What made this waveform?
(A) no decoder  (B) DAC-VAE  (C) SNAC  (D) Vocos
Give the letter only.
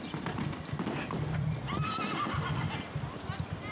A